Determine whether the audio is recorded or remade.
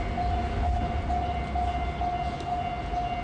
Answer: recorded